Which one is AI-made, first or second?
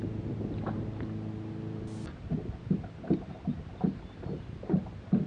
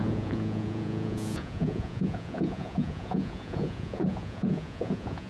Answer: second